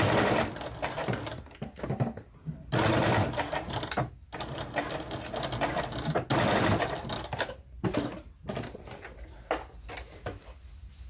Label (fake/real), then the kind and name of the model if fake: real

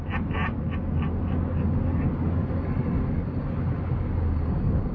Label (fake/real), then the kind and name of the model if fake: real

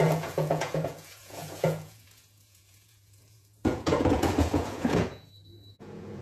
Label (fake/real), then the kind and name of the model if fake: fake, vocoder, Vocos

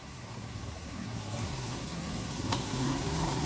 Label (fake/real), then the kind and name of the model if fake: fake, codec, SNAC